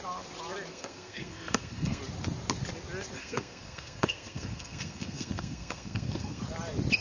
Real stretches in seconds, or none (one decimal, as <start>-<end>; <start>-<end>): 0.0-0.7; 2.0-3.2; 6.4-7.0